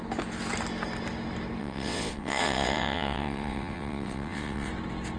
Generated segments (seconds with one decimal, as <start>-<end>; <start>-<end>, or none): 1.6-4.7